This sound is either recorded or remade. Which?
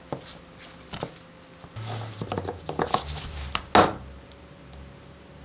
recorded